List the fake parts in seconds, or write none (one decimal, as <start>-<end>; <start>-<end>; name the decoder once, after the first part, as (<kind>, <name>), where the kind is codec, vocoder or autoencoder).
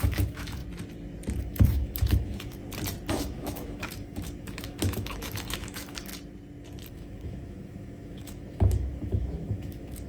0.0-0.6 (autoencoder, DAC-VAE); 1.4-2.6; 3.1-6.1; 6.9-10.1